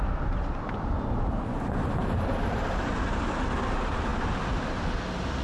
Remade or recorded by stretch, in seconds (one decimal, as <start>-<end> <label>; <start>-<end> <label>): 0.0-2.0 recorded; 2.0-2.9 remade; 2.9-5.4 recorded